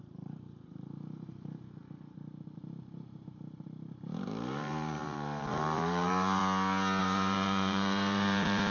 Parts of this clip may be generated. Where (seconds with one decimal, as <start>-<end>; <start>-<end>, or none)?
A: 0.0-6.4; 7.0-8.7